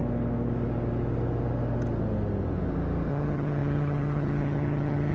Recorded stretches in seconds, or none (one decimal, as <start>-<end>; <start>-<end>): 0.0-3.1